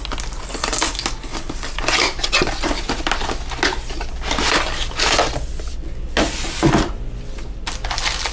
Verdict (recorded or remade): recorded